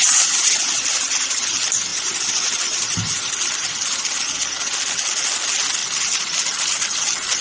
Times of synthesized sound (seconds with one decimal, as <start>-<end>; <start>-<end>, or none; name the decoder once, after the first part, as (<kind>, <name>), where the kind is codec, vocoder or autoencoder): 0.9-1.4 (vocoder, BigVGAN v2); 1.9-3.3; 5.8-7.0